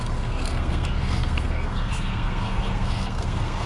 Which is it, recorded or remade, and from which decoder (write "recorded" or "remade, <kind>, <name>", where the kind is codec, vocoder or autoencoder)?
remade, codec, SNAC